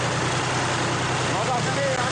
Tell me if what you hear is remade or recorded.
recorded